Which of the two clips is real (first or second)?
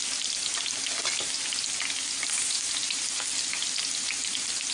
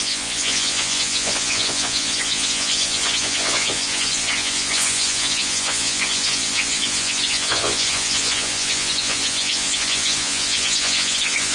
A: first